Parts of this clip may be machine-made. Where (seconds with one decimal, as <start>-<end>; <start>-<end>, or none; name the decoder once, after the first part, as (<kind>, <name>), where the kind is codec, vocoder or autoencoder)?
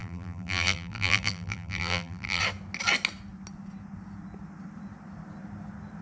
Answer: 0.0-2.4 (vocoder, BigVGAN v2)